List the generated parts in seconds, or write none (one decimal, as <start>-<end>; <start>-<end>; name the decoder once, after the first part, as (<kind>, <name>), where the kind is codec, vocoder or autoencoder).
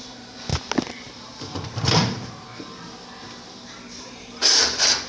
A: none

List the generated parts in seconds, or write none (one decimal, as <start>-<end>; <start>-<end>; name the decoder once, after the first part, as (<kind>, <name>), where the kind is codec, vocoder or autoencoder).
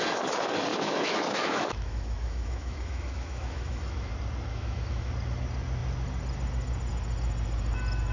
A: 0.7-4.1 (autoencoder, DAC-VAE); 4.5-5.1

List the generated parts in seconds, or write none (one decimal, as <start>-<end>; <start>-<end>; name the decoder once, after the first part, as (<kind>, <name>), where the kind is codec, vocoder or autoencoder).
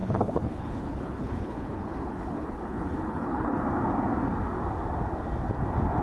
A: 0.0-3.6 (codec, HILCodec)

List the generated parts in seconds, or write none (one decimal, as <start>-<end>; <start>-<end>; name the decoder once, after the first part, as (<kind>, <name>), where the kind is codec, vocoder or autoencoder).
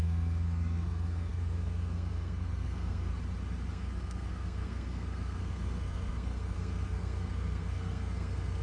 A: 0.0-3.1 (codec, SNAC); 3.7-8.6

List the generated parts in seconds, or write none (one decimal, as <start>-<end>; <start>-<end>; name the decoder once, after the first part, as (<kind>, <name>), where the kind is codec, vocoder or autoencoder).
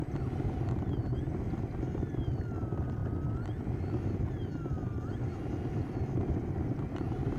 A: none